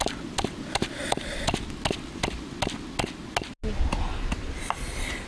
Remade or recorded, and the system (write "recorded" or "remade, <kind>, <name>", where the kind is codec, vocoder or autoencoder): recorded